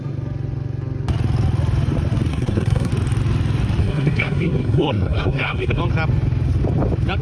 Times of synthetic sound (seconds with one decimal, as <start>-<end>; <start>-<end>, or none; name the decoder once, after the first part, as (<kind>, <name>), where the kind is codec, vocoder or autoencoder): 2.3-2.9 (codec, SNAC); 3.8-5.8